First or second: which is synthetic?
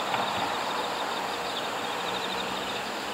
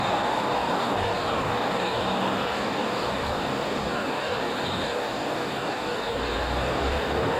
second